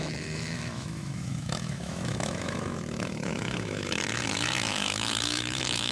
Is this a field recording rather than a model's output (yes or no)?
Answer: no